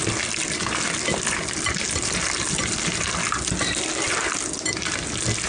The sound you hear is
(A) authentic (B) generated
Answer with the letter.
A